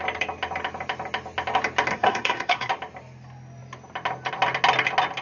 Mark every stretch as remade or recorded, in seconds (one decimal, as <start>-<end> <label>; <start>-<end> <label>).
0.0-1.9 recorded; 1.9-2.7 remade; 2.7-5.2 recorded